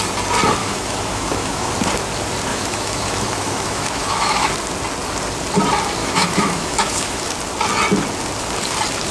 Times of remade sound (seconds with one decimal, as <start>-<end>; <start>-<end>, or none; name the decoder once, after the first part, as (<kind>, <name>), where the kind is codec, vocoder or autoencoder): 0.6-1.7 (autoencoder, DAC-VAE); 2.5-4.5; 6.0-7.3